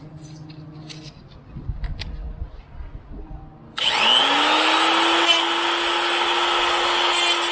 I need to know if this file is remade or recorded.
recorded